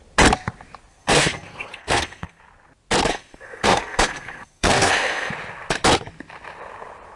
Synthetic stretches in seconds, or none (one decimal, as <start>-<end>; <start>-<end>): 0.9-2.4; 3.1-5.3